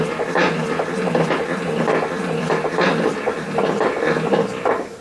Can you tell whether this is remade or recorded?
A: recorded